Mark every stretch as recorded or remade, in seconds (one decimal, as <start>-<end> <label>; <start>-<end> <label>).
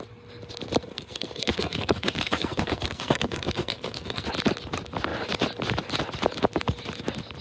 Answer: 0.0-0.8 recorded; 0.8-4.3 remade; 4.3-7.4 recorded